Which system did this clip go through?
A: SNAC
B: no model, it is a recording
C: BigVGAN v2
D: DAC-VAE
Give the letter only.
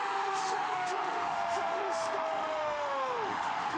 D